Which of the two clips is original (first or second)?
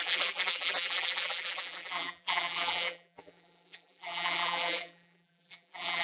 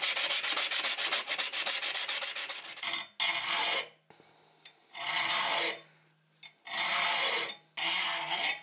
second